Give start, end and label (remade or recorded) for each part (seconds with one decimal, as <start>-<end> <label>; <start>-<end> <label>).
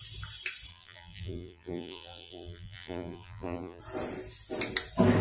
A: 0.0-0.7 recorded; 0.7-3.8 remade; 3.8-5.2 recorded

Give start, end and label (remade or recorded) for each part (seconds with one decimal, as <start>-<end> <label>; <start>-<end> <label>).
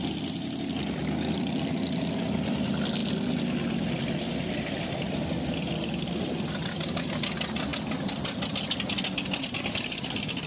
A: 0.0-10.5 recorded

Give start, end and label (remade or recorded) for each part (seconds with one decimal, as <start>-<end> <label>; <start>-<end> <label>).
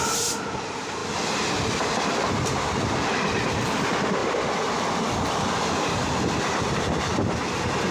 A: 0.0-1.0 recorded; 1.0-1.9 remade; 1.9-4.2 recorded; 4.2-5.6 remade; 5.6-7.9 recorded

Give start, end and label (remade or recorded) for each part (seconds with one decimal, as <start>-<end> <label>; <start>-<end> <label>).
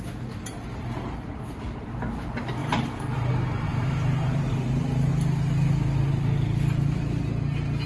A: 0.0-2.6 recorded; 2.6-3.3 remade; 3.3-3.7 recorded; 3.7-5.1 remade; 5.1-7.9 recorded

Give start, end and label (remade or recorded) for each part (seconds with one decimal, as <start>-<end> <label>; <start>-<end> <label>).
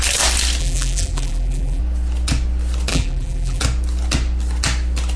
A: 0.0-0.6 recorded; 0.6-1.8 remade; 1.8-2.9 recorded; 2.9-3.6 remade; 3.6-5.2 recorded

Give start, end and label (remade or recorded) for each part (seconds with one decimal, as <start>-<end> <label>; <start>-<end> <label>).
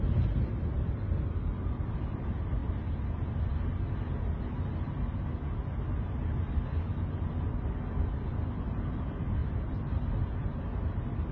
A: 0.0-9.4 recorded; 9.4-10.1 remade; 10.1-11.3 recorded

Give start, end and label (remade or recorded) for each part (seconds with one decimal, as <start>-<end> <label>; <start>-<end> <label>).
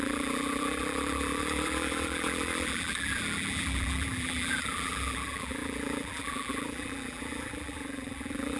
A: 0.0-8.6 remade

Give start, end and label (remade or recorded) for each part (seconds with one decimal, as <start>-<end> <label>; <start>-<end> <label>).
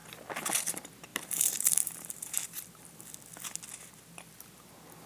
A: 0.0-1.1 recorded; 1.1-3.0 remade; 3.0-5.1 recorded